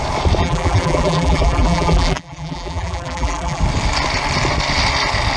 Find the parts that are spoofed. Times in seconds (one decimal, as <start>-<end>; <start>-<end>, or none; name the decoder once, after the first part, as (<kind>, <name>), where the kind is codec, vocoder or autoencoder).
0.4-3.6 (vocoder, BigVGAN v2)

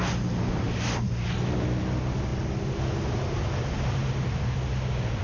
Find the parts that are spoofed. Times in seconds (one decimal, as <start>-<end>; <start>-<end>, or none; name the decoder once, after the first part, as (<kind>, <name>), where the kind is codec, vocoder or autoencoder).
none

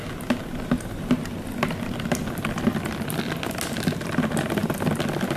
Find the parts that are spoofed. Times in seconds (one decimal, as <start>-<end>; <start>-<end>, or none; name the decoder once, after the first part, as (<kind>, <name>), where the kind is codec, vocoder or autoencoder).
none

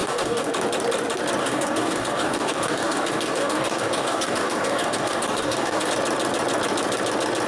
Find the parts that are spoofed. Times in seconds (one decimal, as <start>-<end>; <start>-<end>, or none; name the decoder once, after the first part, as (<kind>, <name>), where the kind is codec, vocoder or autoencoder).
0.0-0.5 (codec, DAC); 1.4-5.9

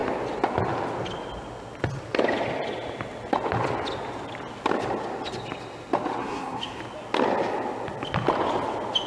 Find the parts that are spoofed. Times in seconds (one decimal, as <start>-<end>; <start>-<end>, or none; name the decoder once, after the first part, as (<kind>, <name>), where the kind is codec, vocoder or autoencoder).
6.2-6.8 (codec, SNAC)